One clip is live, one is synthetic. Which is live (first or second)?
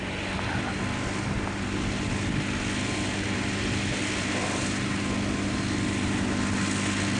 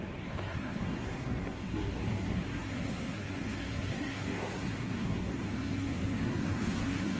first